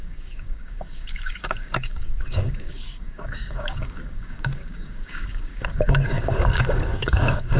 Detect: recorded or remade remade